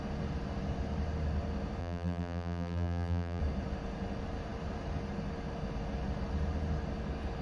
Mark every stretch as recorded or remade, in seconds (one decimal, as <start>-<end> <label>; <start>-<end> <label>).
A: 0.0-1.8 recorded; 1.8-3.4 remade; 3.4-7.4 recorded